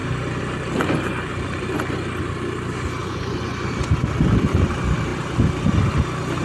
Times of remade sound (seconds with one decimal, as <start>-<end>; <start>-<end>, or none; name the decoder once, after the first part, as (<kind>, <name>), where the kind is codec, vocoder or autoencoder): 3.0-3.7 (vocoder, Vocos)